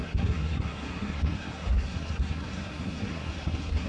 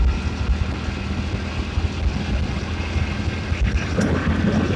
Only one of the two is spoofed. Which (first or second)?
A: first